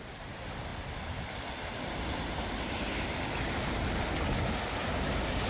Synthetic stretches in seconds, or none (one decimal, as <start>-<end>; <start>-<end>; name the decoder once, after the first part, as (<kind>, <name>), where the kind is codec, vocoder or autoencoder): none

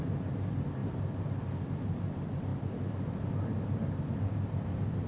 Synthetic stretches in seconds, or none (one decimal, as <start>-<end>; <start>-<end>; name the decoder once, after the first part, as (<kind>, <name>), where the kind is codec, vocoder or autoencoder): none

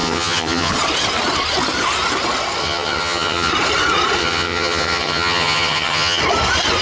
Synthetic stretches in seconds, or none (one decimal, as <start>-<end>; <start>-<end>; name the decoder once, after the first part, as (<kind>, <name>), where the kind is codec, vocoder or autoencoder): 0.0-0.7 (vocoder, HiFi-GAN); 2.6-3.5; 4.2-6.2

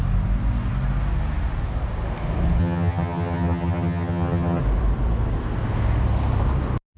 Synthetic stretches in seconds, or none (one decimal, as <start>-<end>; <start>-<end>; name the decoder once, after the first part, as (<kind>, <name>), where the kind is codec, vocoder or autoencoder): 2.6-4.6 (vocoder, HiFi-GAN)

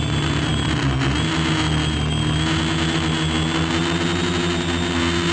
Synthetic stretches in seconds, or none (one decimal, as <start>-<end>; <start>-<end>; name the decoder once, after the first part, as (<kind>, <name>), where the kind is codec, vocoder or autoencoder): none